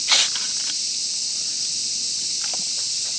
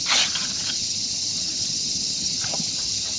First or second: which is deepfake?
second